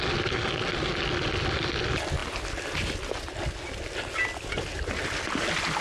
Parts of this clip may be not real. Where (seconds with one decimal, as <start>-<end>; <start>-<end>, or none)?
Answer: none